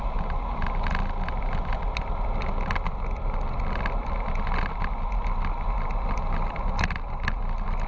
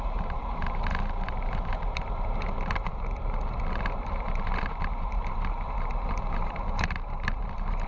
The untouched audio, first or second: first